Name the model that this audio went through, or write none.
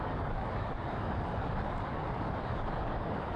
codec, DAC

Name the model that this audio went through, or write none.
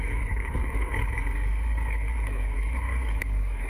codec, DAC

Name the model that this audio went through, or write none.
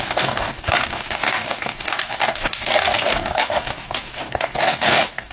codec, DAC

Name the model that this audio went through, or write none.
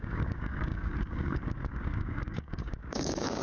codec, DAC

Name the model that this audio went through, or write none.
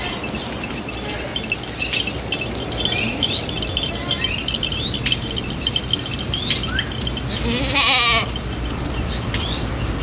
none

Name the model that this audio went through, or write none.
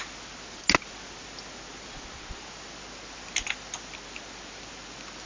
none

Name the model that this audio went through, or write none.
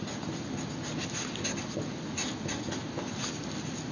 none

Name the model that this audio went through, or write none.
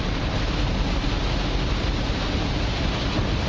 none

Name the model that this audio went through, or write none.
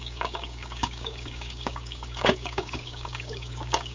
codec, DAC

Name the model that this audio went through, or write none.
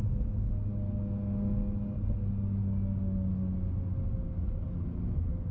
none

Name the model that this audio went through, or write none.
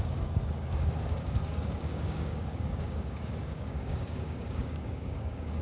codec, DAC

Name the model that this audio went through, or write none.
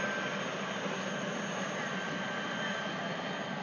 none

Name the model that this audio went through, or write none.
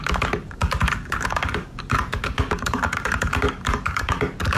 codec, DAC